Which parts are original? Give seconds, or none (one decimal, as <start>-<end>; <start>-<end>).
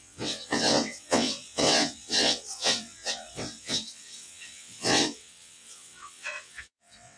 none